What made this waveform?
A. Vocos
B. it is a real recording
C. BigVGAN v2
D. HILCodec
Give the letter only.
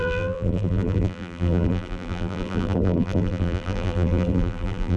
C